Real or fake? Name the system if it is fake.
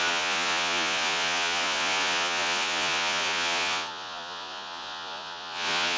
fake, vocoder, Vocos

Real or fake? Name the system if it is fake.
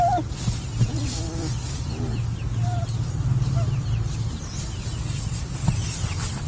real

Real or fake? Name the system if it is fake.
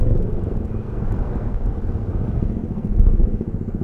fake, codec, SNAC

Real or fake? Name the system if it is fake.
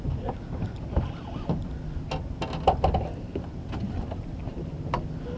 real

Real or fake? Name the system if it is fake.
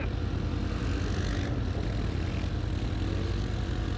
real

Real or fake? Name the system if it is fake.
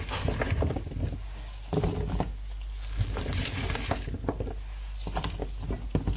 real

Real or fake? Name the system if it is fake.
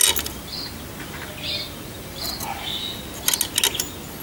real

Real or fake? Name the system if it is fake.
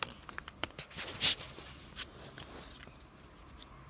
real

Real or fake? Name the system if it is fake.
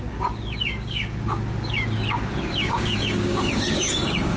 fake, codec, DAC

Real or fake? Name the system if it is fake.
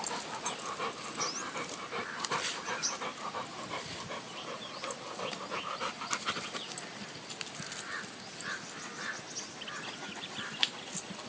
real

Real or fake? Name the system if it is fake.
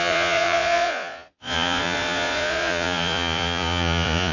fake, vocoder, Vocos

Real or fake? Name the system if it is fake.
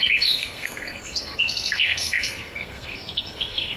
fake, codec, SNAC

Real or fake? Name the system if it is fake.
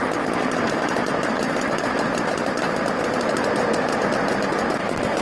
fake, vocoder, BigVGAN v2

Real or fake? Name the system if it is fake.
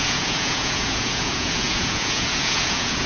fake, vocoder, Vocos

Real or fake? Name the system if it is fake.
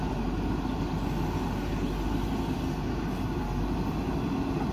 real